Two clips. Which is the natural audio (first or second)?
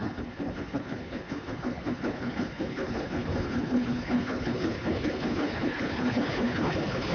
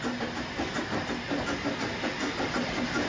second